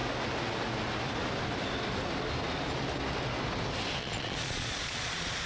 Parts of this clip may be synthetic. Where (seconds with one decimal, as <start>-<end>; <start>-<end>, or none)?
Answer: 4.0-5.5